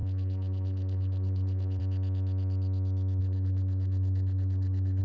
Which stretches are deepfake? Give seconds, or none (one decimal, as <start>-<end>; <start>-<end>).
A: 0.0-1.8; 3.2-5.0